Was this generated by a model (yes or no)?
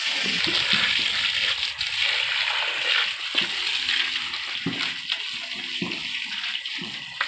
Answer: no